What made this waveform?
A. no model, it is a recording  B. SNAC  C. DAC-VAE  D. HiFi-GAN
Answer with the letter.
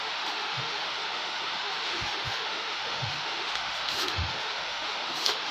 C